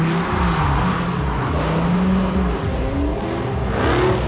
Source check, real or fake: real